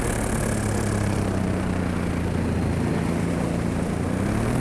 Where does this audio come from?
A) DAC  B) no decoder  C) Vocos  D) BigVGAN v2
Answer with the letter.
B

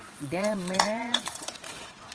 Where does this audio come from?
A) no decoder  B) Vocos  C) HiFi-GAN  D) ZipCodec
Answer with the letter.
B